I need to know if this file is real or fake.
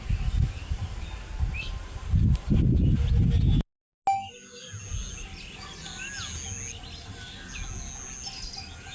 real